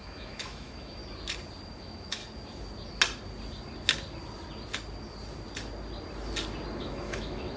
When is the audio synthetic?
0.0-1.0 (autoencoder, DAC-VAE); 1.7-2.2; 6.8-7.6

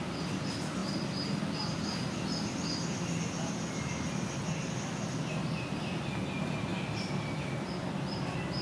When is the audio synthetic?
6.7-7.7 (vocoder, BigVGAN v2)

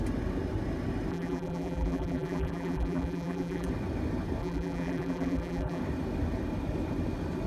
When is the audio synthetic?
1.1-3.7 (vocoder, BigVGAN v2); 4.4-5.8

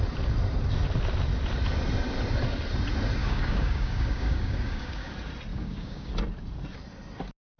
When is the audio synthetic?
3.2-5.1 (codec, DAC); 5.5-6.1

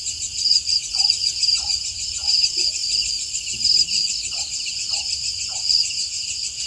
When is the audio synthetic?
0.0-2.8 (vocoder, Vocos); 4.7-6.7

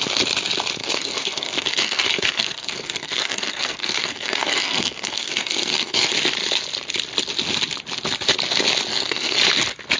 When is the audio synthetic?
0.8-6.1 (codec, SNAC); 8.9-9.4